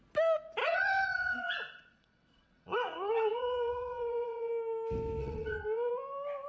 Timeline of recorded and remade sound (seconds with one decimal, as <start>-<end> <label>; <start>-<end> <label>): 0.0-0.6 recorded; 0.6-4.5 remade; 4.5-5.2 recorded; 5.2-5.9 remade; 5.9-6.5 recorded